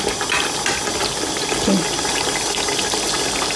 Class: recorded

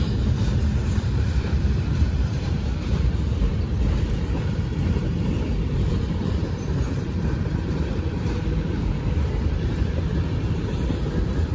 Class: remade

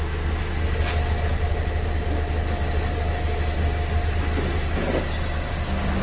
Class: recorded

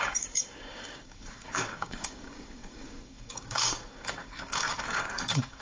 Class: remade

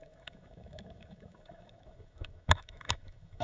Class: remade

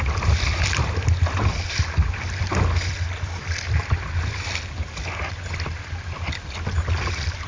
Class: recorded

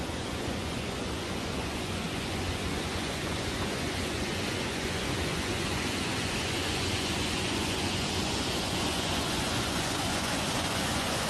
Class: remade